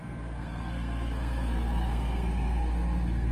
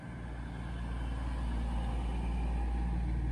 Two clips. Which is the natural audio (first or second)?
second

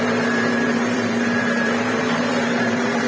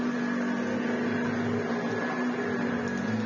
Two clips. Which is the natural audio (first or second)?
second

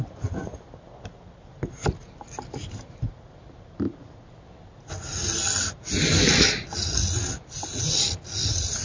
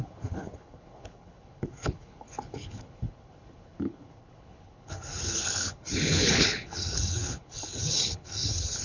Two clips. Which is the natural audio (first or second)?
first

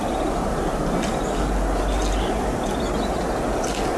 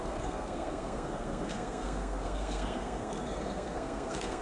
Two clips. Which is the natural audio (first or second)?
first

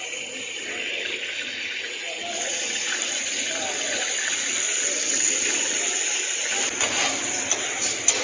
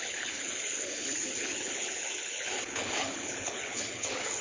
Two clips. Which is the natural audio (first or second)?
first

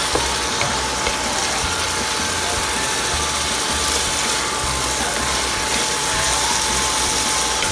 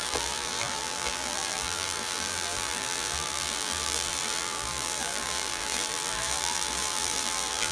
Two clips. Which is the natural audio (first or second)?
first